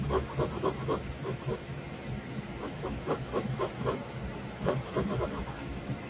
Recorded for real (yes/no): no